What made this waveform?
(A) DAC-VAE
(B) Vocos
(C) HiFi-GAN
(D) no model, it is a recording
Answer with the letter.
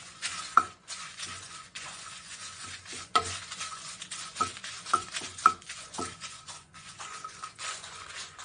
B